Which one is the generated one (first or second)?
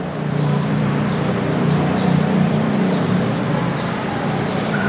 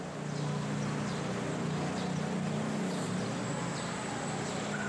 first